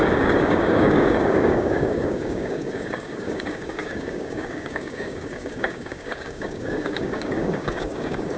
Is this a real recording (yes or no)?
no